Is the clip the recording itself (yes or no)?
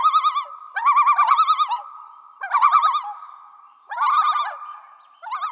yes